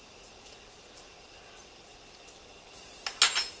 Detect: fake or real real